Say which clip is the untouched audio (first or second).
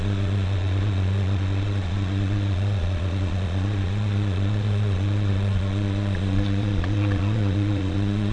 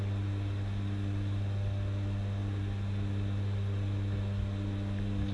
second